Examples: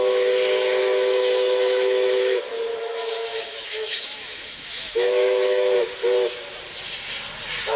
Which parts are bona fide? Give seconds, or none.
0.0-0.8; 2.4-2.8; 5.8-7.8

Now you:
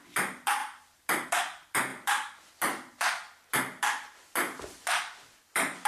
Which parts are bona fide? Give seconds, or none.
0.0-5.9

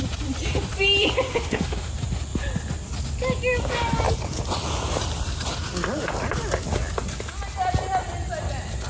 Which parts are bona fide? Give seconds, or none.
0.0-1.3; 1.9-8.9

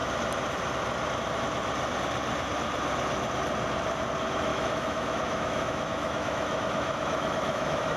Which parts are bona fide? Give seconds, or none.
0.0-4.5

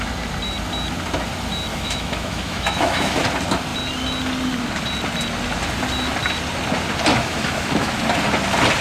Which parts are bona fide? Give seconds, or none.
0.0-1.7; 3.2-7.1; 8.0-8.8

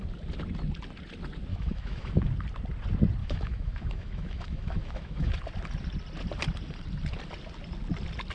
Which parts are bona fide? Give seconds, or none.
0.0-1.5; 2.1-3.2; 5.3-8.3

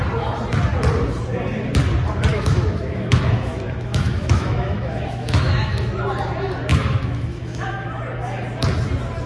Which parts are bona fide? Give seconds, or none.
0.0-2.3; 5.9-6.7; 8.0-9.3